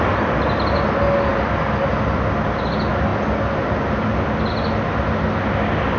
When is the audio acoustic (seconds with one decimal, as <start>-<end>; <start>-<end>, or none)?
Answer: 0.0-6.0